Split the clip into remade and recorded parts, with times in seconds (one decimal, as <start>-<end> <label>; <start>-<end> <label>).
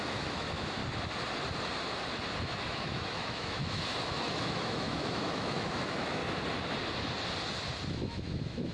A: 0.0-0.8 remade; 0.8-2.4 recorded; 2.4-6.2 remade; 6.2-7.9 recorded; 7.9-8.7 remade